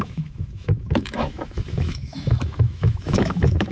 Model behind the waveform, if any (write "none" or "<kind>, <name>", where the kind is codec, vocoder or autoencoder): autoencoder, DAC-VAE